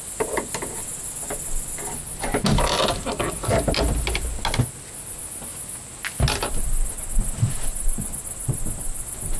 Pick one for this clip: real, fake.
real